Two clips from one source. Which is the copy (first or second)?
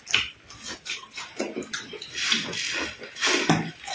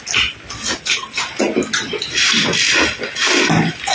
first